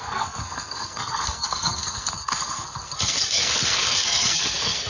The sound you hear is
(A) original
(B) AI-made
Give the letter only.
B